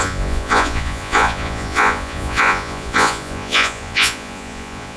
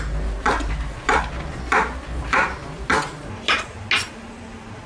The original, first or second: second